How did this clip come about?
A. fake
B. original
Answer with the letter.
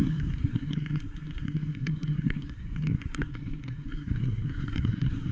A